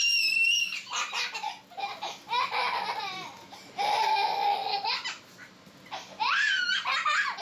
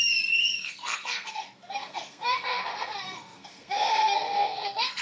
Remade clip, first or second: second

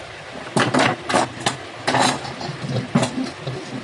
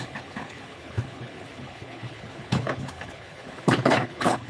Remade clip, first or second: second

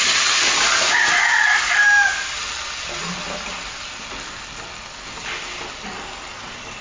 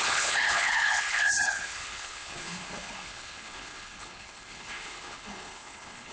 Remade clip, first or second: second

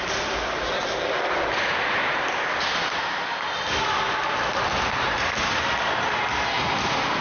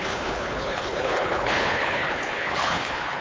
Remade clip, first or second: second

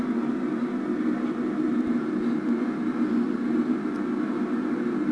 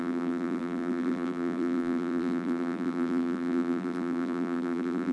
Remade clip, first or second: second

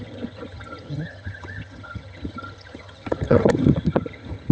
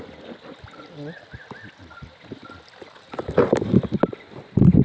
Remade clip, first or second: first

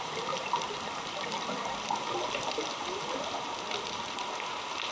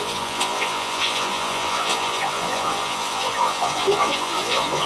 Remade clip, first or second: second